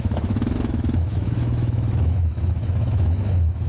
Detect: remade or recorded remade